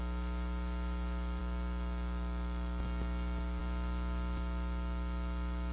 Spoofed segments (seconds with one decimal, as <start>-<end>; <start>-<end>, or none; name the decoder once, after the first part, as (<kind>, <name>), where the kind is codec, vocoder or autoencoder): 1.4-3.6 (autoencoder, DAC-VAE)